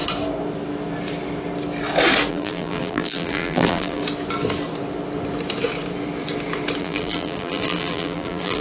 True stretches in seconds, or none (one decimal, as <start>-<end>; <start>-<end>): 0.0-2.3; 4.0-6.8